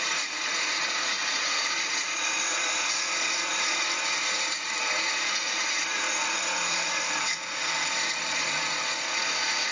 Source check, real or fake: fake